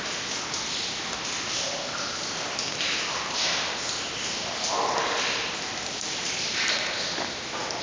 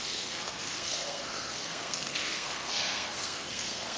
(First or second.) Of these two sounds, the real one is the first